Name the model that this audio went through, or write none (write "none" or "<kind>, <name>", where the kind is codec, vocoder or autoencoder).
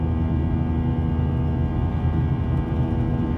none